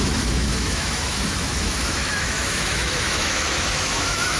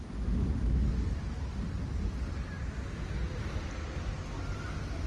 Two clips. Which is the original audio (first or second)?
second